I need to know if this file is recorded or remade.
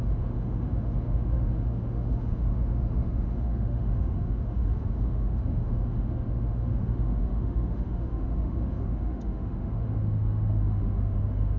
remade